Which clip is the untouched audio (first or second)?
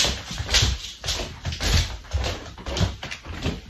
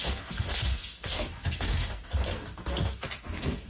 first